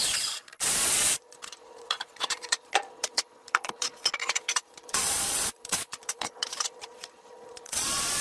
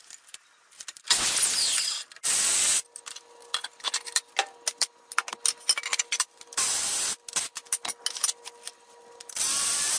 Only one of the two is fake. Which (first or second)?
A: first